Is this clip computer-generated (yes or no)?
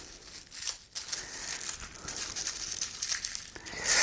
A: no